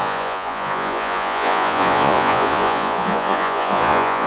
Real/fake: fake